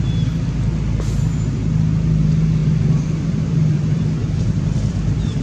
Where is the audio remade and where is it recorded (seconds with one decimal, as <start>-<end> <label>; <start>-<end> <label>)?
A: 0.0-2.6 recorded; 2.6-5.4 remade